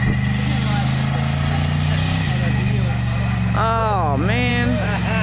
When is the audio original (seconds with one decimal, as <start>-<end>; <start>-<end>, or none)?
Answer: 0.0-5.2

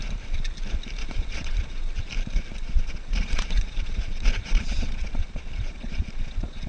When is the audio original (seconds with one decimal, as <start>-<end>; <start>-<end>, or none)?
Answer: 0.0-1.0; 2.1-2.6

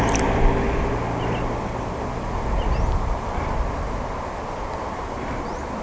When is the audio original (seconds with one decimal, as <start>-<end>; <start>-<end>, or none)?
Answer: 0.0-5.8

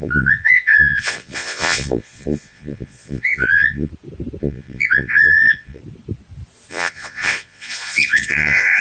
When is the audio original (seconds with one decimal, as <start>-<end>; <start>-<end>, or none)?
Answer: 3.9-4.4; 5.8-6.7

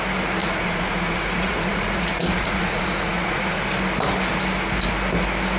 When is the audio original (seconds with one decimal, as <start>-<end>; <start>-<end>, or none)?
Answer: 0.0-0.4; 3.6-5.6